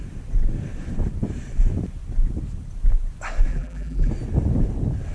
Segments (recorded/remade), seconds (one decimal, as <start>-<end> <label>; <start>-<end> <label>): 0.0-3.5 recorded; 3.5-4.1 remade; 4.1-5.1 recorded